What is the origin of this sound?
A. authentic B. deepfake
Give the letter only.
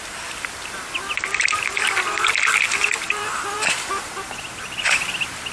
B